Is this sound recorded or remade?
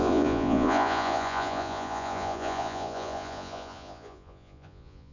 remade